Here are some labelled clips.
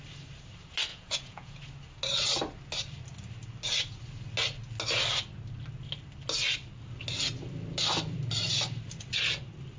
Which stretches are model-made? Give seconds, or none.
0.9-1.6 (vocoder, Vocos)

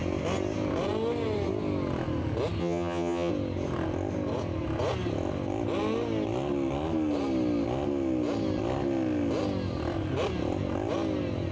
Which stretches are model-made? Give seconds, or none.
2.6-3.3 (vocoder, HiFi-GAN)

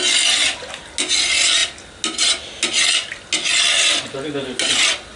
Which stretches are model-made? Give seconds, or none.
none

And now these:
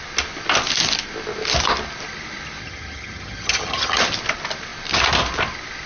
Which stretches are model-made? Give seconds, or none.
2.6-4.0 (vocoder, HiFi-GAN)

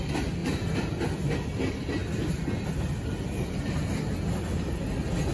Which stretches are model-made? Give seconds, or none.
0.4-1.0 (vocoder, BigVGAN v2)